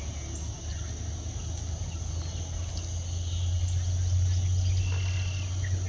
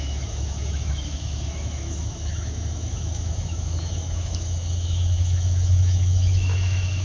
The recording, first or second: first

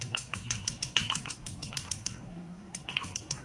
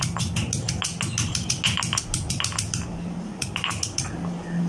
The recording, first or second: second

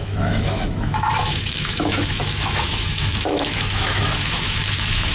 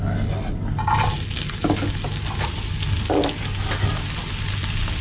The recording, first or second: second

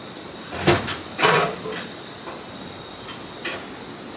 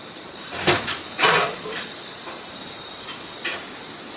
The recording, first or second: first